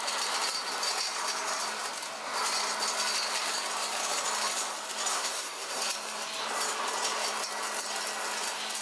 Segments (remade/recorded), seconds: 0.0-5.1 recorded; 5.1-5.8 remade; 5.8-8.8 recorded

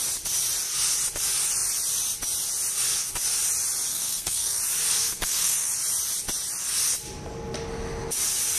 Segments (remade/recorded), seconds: 0.0-3.9 recorded; 3.9-4.6 remade; 4.6-5.1 recorded; 5.1-5.7 remade; 5.7-8.6 recorded